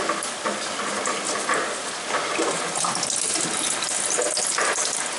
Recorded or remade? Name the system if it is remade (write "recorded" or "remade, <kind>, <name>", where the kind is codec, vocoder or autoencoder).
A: recorded